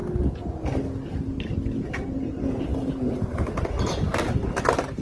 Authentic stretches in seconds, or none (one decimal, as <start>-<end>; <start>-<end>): 0.0-5.0